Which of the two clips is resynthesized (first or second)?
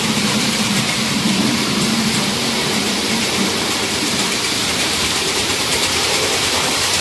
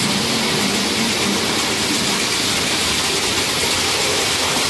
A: first